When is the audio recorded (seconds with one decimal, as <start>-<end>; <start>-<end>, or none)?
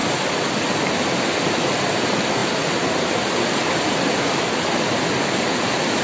0.0-6.0